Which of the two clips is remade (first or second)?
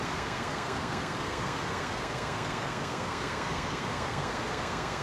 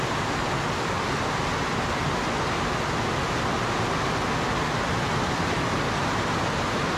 first